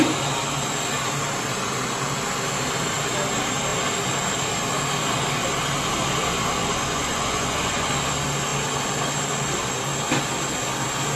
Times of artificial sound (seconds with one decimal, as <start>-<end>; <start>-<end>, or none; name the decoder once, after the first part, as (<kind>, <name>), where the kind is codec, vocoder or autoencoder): 6.6-7.9 (vocoder, Vocos)